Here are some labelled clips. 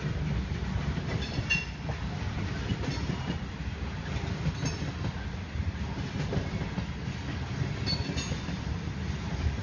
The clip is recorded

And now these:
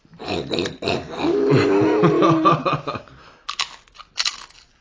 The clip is recorded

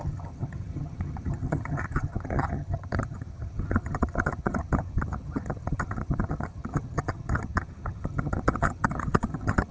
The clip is remade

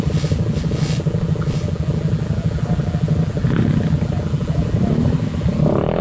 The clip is recorded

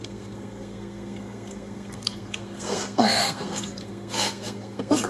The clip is remade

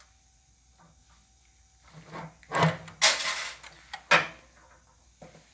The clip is recorded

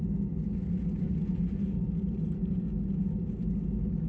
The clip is recorded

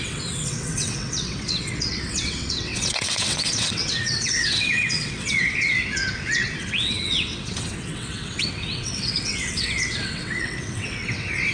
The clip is remade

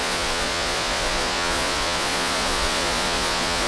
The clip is remade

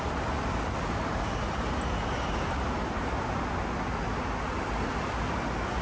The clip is recorded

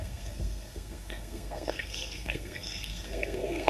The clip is remade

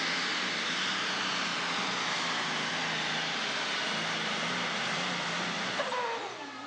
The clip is recorded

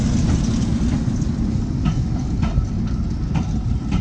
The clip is recorded